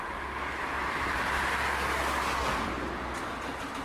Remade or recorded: recorded